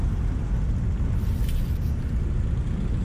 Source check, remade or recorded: recorded